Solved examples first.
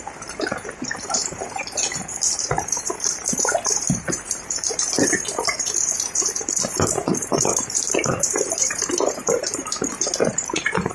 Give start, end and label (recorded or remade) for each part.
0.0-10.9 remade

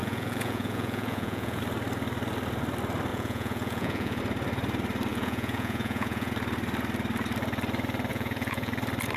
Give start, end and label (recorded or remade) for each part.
0.0-1.6 remade; 1.6-3.1 recorded; 3.1-4.2 remade; 4.2-5.1 recorded; 5.1-6.3 remade; 6.3-8.1 recorded; 8.1-8.7 remade; 8.7-9.2 recorded

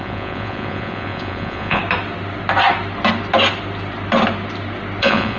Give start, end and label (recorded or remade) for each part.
0.0-1.8 remade; 1.8-5.0 recorded; 5.0-5.4 remade

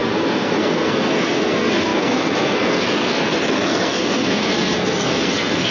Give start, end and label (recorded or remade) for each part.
0.0-5.7 remade

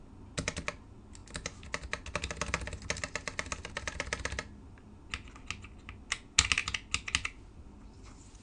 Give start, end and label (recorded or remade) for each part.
0.0-8.4 recorded

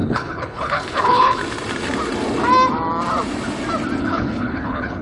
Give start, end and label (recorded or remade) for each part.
0.0-1.4 remade; 1.4-4.0 recorded; 4.0-5.0 remade

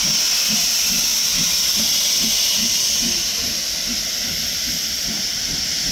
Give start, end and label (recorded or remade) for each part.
0.0-5.9 recorded